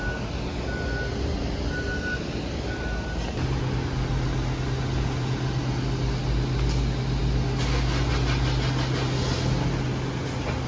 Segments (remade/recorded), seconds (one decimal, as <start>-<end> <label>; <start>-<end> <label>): 0.0-10.7 recorded

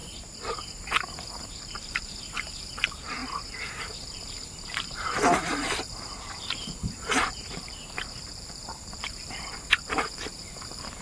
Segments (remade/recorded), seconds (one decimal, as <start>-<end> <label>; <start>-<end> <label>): 0.0-1.5 recorded; 1.5-11.0 remade

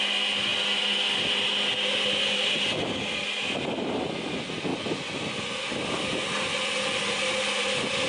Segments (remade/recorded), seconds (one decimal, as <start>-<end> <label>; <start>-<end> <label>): 0.0-8.1 recorded

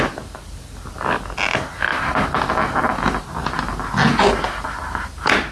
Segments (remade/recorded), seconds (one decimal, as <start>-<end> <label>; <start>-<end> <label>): 0.0-5.5 recorded

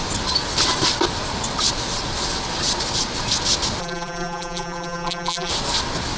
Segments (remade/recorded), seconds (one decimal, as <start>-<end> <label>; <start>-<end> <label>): 0.0-3.8 recorded; 3.8-5.5 remade; 5.5-6.2 recorded

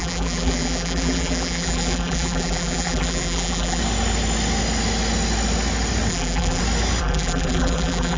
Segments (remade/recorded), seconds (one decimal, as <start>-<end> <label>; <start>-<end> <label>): 0.0-3.8 remade; 3.8-6.1 recorded; 6.1-6.6 remade; 6.6-7.0 recorded; 7.0-8.2 remade

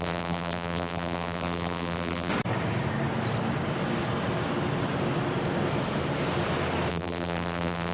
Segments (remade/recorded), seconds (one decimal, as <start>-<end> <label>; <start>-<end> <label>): 0.0-2.3 remade; 2.3-6.9 recorded; 6.9-7.9 remade

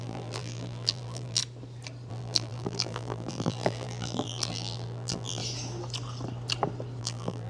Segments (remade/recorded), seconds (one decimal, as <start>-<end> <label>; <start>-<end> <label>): 0.0-1.4 remade; 1.4-2.1 recorded; 2.1-5.4 remade; 5.4-7.0 recorded; 7.0-7.5 remade